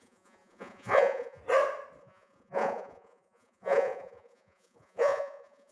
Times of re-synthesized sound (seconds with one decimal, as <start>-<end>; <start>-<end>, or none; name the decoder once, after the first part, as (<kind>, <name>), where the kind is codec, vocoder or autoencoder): 0.0-1.4 (vocoder, Vocos); 2.0-5.7